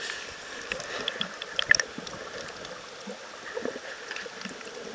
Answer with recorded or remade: recorded